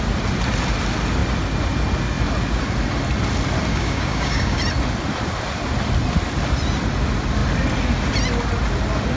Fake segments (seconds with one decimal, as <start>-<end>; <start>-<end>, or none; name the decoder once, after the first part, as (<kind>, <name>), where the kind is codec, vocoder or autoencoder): 3.7-4.6 (codec, DAC)